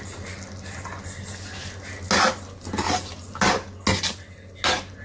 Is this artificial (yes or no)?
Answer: no